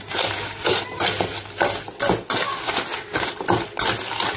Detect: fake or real real